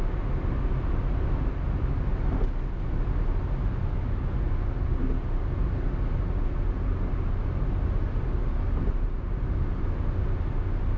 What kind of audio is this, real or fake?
real